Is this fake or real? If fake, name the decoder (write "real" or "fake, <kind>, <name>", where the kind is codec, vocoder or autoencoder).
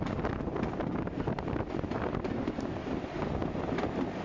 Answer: real